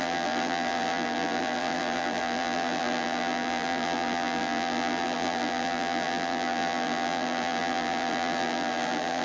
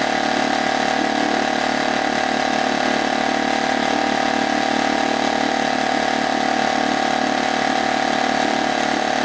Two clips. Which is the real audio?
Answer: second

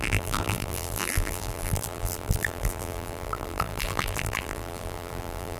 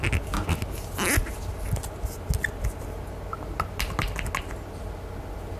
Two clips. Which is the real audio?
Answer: second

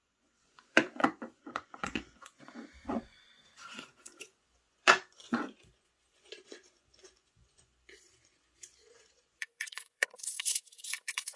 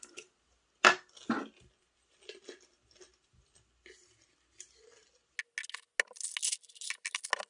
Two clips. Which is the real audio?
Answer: second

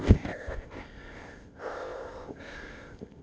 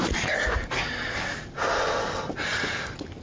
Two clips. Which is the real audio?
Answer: second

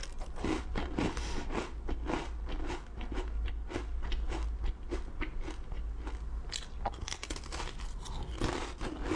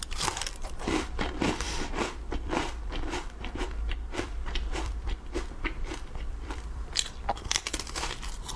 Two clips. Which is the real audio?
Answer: first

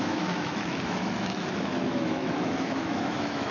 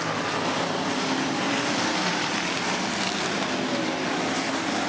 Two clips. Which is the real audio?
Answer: second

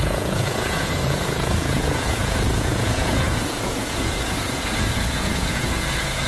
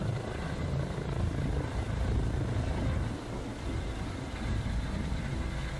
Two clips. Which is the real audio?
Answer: second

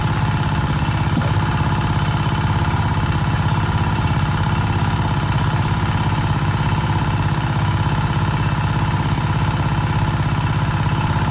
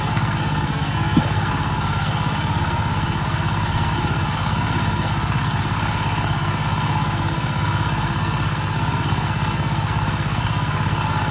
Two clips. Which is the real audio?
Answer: first